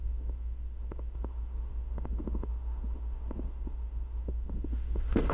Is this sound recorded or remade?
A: remade